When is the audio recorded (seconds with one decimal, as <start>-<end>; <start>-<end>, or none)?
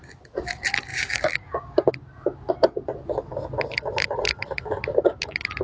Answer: 0.0-0.9; 1.9-5.6